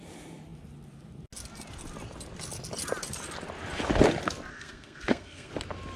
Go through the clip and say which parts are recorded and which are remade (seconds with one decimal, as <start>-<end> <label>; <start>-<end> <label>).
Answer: 0.0-4.5 recorded; 4.5-5.5 remade; 5.5-6.0 recorded